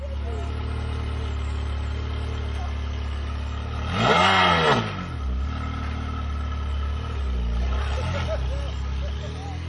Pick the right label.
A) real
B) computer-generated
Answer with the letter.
A